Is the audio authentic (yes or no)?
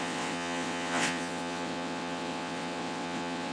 no